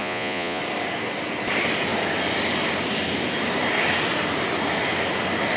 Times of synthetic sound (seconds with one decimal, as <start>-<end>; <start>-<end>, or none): 0.0-0.6